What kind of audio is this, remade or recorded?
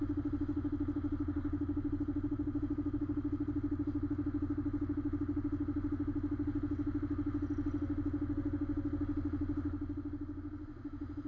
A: recorded